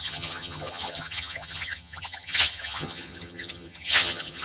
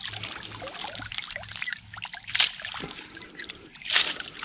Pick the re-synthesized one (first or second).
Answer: first